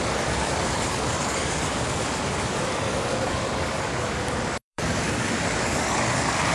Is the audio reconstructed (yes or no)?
yes